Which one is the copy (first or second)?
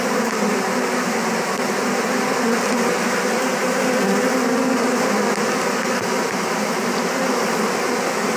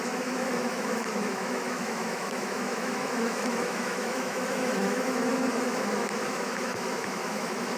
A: second